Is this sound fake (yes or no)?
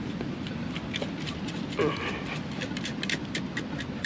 no